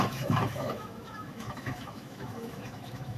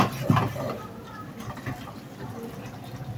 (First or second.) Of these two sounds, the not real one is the first